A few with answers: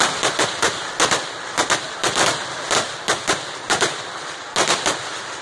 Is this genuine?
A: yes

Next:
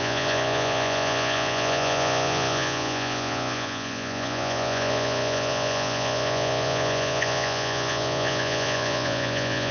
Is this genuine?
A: no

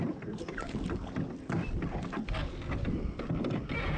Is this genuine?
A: yes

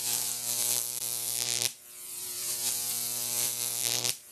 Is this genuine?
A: no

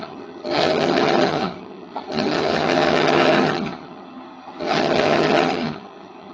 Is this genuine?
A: no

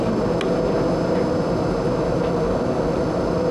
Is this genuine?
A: yes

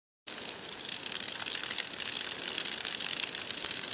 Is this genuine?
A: yes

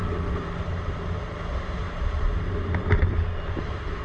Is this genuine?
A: yes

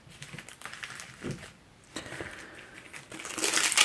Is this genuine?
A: yes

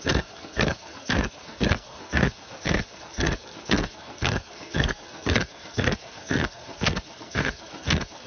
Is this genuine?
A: no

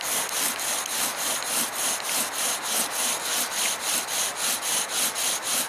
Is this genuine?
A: yes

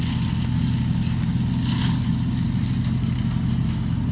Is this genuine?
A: yes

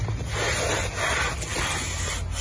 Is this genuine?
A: yes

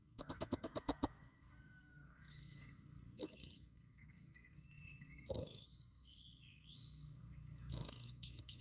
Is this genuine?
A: no